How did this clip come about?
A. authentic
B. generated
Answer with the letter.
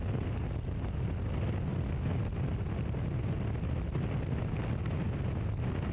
A